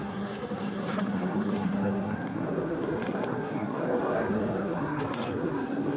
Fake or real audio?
fake